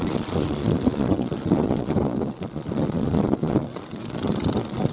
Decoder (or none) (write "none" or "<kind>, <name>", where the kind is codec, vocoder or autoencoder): vocoder, Vocos